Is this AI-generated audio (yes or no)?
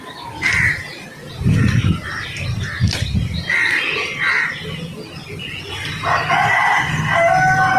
no